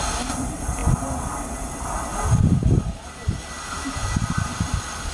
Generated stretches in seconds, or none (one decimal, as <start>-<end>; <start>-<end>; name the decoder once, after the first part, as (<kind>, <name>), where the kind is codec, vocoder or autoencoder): none